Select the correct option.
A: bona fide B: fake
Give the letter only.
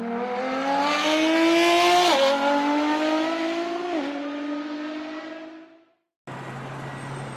A